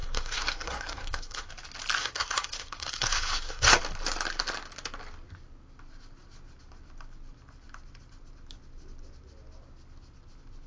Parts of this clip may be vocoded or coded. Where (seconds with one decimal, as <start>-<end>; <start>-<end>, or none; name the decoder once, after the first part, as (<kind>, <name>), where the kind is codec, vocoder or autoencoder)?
0.0-1.5 (codec, SNAC); 2.0-3.8

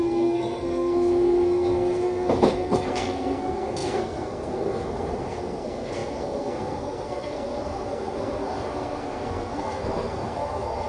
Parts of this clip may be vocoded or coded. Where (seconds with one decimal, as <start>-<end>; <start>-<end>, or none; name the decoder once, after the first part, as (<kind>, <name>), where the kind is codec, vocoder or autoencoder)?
0.0-10.9 (codec, SNAC)

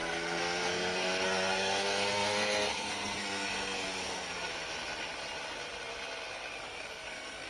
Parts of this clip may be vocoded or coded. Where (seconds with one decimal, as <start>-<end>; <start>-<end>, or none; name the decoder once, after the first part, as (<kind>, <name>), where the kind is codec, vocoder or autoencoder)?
0.0-4.5 (codec, SNAC); 6.6-7.5